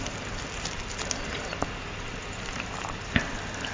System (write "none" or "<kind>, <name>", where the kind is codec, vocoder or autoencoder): none